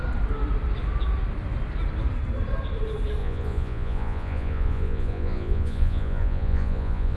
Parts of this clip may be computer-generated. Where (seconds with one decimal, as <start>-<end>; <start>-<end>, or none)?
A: 3.2-7.2